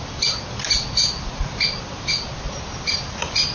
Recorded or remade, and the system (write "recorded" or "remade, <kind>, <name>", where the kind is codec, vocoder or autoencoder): recorded